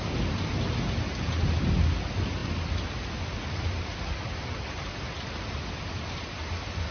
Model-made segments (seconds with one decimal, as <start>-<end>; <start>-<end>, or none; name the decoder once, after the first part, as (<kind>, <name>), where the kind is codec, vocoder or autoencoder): none